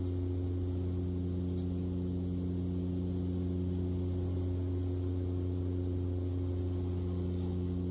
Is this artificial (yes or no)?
no